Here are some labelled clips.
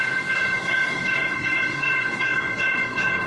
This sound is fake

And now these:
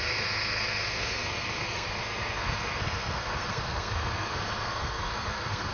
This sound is fake